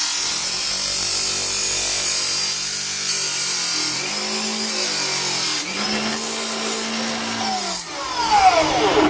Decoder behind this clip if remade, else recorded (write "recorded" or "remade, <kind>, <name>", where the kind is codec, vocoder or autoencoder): recorded